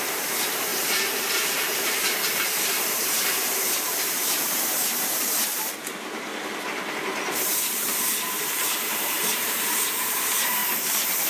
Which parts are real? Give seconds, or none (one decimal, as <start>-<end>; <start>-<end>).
10.6-11.3